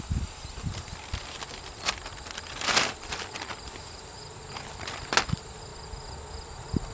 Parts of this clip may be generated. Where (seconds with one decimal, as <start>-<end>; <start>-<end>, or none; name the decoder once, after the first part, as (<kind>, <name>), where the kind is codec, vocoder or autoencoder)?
none